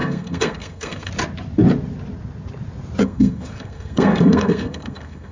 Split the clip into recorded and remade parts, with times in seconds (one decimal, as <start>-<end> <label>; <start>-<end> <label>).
0.0-1.1 remade; 1.1-3.0 recorded; 3.0-5.3 remade